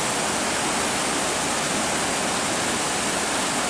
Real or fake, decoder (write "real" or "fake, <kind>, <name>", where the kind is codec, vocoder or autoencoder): real